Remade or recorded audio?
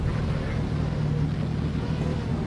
recorded